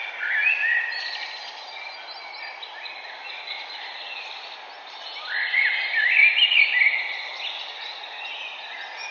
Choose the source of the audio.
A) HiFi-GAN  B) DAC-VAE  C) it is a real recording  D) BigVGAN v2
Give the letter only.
C